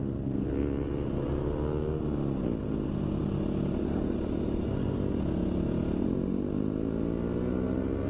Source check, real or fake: real